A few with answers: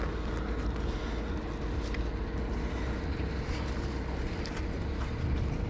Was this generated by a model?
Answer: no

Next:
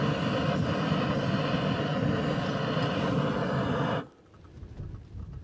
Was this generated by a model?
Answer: no